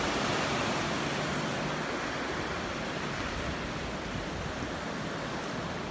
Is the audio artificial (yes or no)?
no